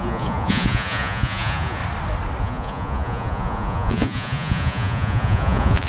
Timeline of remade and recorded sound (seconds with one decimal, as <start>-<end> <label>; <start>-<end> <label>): 0.0-1.8 remade; 1.8-2.4 recorded; 2.4-5.9 remade